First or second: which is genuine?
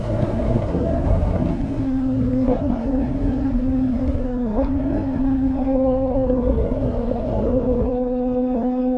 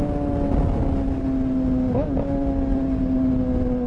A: second